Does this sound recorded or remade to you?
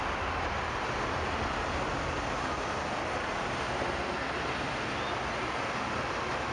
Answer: recorded